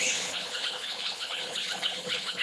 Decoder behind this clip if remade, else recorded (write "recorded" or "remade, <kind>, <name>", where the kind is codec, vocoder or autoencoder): remade, codec, HILCodec